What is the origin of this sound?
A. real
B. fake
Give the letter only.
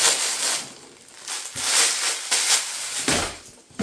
A